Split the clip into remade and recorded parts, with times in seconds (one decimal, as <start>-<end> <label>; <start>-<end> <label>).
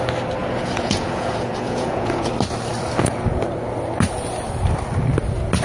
0.0-0.4 recorded; 0.4-2.3 remade; 2.3-5.6 recorded